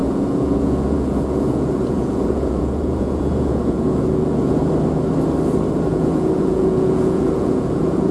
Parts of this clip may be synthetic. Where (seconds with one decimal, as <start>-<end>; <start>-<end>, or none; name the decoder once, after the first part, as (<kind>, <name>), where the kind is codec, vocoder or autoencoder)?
0.0-4.7 (vocoder, Vocos); 5.9-8.1